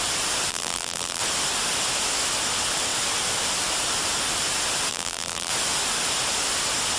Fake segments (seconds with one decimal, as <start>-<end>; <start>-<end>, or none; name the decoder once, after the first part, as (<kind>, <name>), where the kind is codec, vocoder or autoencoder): 0.5-1.2 (vocoder, BigVGAN v2); 4.9-5.5